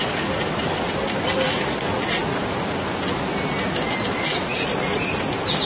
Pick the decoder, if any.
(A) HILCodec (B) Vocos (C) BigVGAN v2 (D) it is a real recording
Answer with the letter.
D